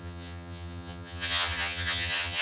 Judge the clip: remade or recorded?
remade